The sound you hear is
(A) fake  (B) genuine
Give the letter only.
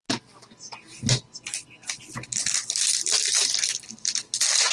B